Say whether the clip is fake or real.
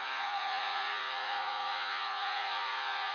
fake